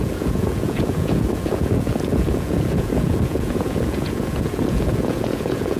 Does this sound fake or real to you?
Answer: fake